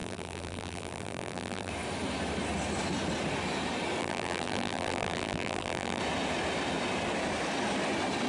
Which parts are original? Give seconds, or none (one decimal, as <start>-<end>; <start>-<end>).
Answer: 1.7-4.0; 6.0-8.3